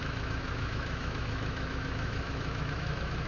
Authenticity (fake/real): fake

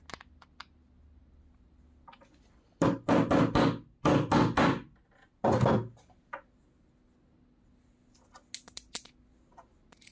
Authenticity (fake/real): real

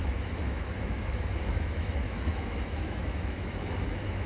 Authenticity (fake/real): fake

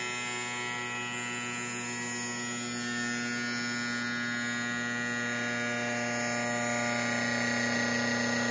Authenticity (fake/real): real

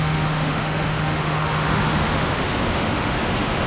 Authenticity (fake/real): fake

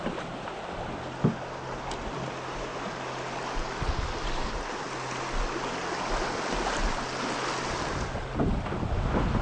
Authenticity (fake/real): real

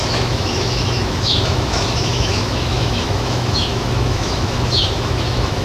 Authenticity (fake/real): fake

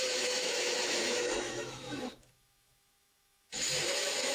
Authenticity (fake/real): fake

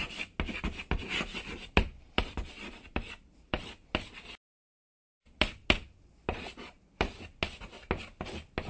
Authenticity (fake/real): real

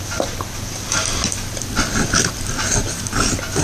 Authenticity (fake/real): real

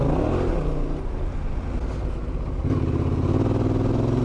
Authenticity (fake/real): real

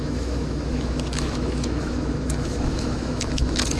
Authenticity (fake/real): fake